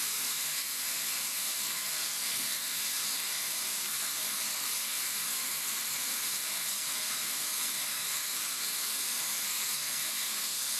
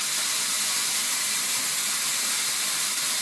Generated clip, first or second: first